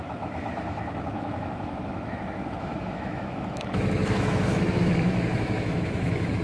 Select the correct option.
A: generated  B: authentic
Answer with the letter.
A